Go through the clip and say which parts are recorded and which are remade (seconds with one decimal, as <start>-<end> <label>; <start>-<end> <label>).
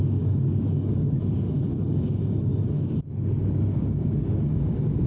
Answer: 0.0-5.1 remade